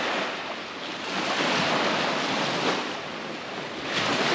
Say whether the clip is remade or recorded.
recorded